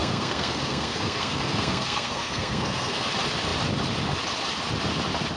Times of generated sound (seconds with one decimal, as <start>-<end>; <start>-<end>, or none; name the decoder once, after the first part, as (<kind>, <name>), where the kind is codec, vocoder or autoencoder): 0.0-3.1 (codec, SNAC)